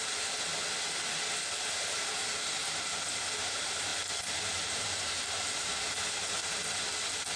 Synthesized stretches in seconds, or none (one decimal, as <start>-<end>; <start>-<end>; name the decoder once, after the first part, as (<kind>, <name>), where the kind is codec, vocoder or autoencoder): 0.0-0.5 (vocoder, BigVGAN v2); 1.8-2.6; 3.2-6.4; 6.9-7.4